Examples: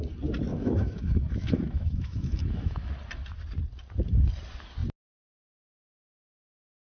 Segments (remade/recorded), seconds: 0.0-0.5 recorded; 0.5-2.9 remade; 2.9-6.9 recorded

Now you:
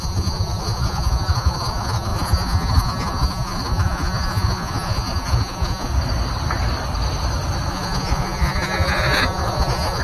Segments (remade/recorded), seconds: 0.0-5.9 remade; 5.9-7.7 recorded; 7.7-10.0 remade

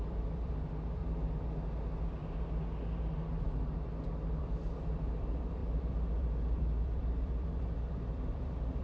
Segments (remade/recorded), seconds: 0.0-1.0 remade; 1.0-4.1 recorded; 4.1-8.8 remade